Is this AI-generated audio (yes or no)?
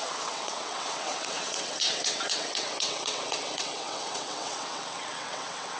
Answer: yes